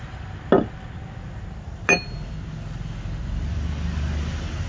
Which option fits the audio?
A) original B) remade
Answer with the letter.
A